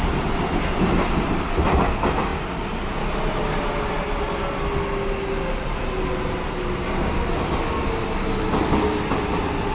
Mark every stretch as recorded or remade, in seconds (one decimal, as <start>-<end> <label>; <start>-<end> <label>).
0.0-9.7 recorded